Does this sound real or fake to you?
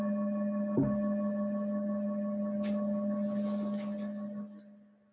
real